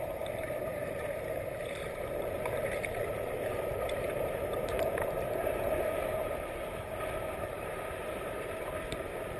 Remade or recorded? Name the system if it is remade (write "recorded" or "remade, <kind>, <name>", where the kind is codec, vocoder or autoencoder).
remade, vocoder, BigVGAN v2